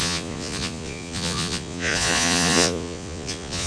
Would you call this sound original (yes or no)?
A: no